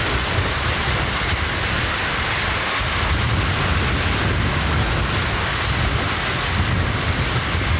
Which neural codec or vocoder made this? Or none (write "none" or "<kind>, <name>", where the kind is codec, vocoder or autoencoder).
none